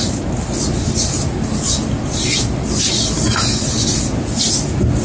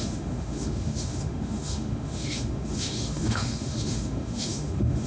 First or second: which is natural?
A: first